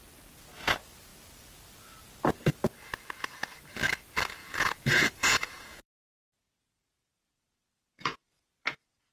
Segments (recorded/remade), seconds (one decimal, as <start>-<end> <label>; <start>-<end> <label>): 0.0-4.4 recorded; 4.4-9.1 remade